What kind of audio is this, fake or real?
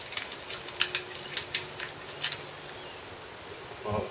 real